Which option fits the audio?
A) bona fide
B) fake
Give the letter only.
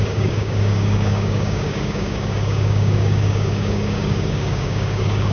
B